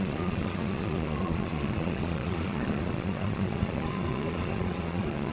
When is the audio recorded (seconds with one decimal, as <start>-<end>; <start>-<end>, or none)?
none